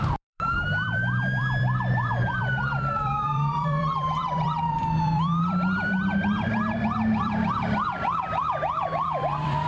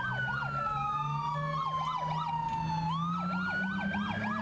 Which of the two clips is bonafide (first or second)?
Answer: second